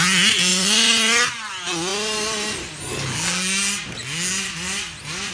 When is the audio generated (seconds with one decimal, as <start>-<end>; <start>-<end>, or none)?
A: 0.5-1.5